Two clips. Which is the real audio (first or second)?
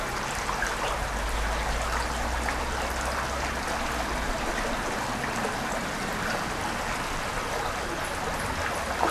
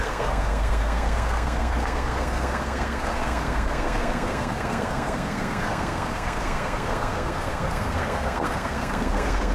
first